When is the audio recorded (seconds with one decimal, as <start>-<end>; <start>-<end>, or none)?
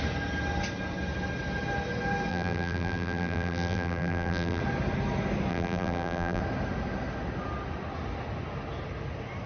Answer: 0.0-2.3; 4.6-5.5; 6.4-9.5